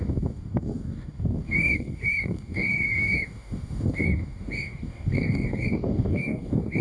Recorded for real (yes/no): no